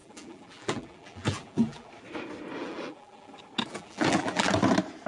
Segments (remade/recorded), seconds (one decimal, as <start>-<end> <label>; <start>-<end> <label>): 0.0-1.9 remade; 1.9-2.6 recorded; 2.6-3.3 remade; 3.3-3.7 recorded; 3.7-4.5 remade; 4.5-5.1 recorded